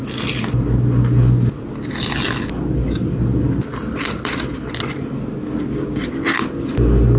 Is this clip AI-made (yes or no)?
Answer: no